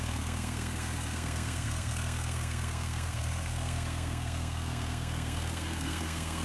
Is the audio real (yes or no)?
no